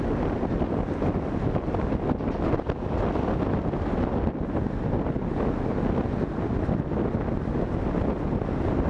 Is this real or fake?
real